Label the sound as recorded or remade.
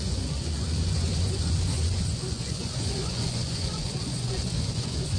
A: remade